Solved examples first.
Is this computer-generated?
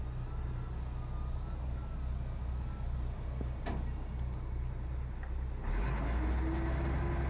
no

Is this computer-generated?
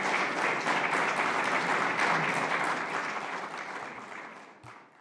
no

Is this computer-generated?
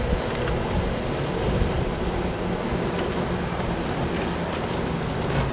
no